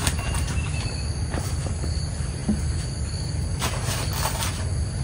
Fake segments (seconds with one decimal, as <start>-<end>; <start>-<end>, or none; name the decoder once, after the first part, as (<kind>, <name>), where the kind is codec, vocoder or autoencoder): none